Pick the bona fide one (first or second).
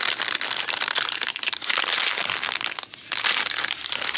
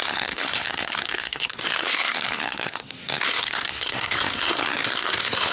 first